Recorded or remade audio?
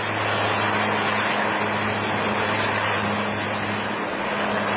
recorded